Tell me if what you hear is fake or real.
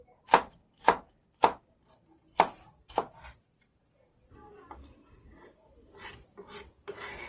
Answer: real